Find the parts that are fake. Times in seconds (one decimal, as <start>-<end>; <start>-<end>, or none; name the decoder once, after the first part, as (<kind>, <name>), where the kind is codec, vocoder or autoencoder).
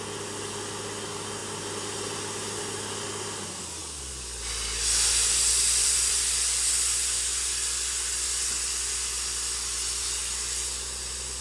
none